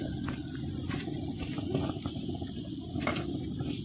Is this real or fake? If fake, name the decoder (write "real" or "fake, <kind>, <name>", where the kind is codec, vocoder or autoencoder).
real